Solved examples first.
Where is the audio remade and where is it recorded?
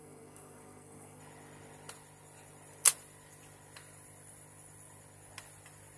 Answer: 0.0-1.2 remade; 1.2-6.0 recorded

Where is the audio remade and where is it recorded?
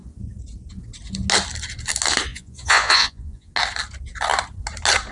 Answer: 0.0-2.3 recorded; 2.3-3.5 remade; 3.5-5.1 recorded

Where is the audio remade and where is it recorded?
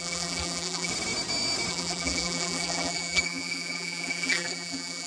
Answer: 0.0-0.9 remade; 0.9-1.7 recorded; 1.7-5.1 remade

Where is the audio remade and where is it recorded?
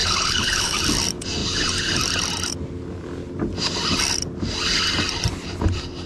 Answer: 0.0-0.8 remade; 0.8-6.1 recorded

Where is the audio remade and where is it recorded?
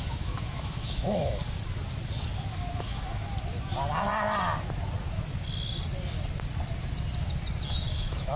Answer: 0.0-1.4 remade; 1.4-2.7 recorded; 2.7-3.3 remade; 3.3-7.9 recorded; 7.9-8.4 remade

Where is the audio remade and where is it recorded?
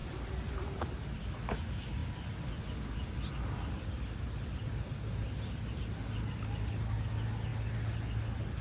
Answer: 0.0-1.2 remade; 1.2-8.6 recorded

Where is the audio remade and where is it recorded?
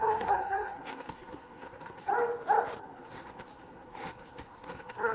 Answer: 0.0-2.1 remade; 2.1-2.8 recorded; 2.8-5.1 remade